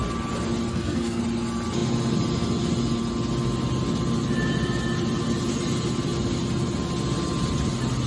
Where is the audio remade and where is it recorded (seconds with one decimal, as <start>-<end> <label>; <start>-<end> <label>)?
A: 0.0-0.7 recorded; 0.7-1.2 remade; 1.2-8.1 recorded

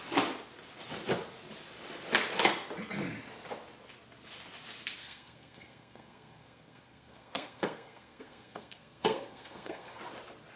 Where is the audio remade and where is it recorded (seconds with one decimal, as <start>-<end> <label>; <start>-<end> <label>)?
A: 0.0-5.0 recorded; 5.0-10.0 remade; 10.0-10.6 recorded